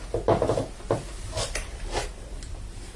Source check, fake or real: real